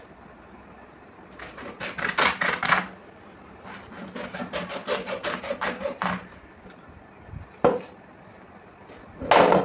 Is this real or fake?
real